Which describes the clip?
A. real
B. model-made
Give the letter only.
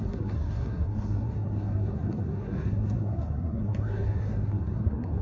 B